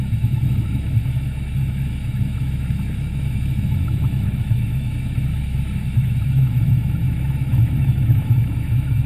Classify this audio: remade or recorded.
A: remade